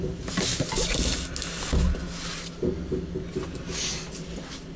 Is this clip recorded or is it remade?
recorded